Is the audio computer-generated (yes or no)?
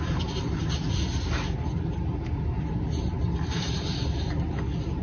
no